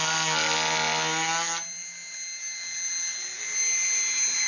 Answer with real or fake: real